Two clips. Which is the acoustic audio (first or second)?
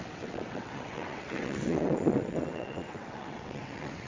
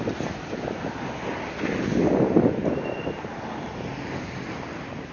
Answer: second